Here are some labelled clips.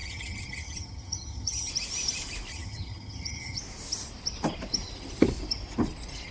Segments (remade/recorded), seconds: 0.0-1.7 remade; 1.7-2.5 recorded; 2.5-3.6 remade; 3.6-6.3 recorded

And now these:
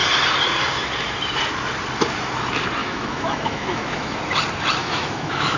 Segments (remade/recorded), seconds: 0.0-2.8 recorded; 2.8-4.2 remade; 4.2-4.8 recorded; 4.8-5.6 remade

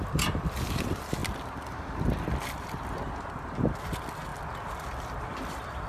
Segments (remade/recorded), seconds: 0.0-1.2 remade; 1.2-3.2 recorded; 3.2-5.9 remade

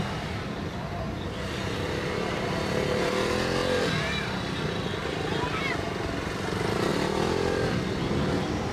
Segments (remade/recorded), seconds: 0.0-8.7 recorded

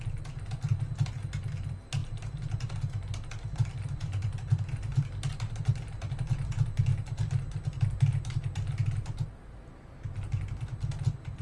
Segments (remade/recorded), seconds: 0.0-11.4 recorded

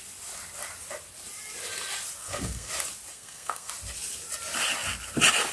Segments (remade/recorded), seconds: 0.0-2.2 recorded; 2.2-2.7 remade; 2.7-3.1 recorded; 3.1-3.7 remade; 3.7-5.5 recorded

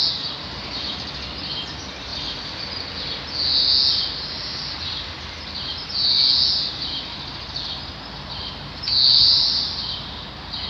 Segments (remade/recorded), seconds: 0.0-9.1 recorded; 9.1-10.2 remade; 10.2-10.7 recorded

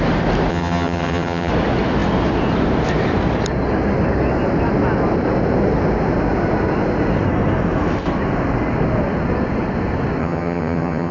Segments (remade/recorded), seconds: 0.0-0.5 recorded; 0.5-1.5 remade; 1.5-10.2 recorded; 10.2-11.1 remade